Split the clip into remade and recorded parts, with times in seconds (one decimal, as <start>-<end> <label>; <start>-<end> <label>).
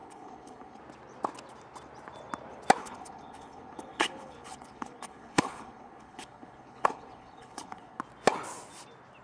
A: 0.0-0.8 remade; 0.8-2.8 recorded; 2.8-8.0 remade; 8.0-9.2 recorded